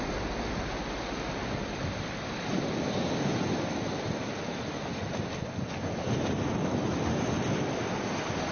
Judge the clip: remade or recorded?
recorded